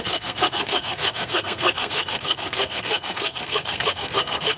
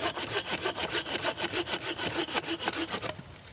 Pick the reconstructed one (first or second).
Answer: first